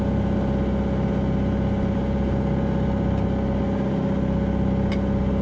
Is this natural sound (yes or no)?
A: yes